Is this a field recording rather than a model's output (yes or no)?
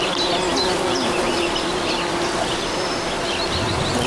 yes